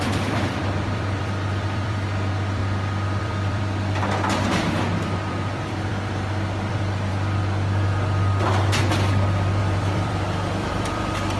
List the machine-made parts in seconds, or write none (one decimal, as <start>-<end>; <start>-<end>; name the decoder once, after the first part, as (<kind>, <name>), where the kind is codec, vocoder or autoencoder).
0.0-2.6 (vocoder, BigVGAN v2); 3.2-7.1; 9.6-11.4